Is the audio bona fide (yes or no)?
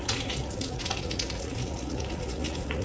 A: no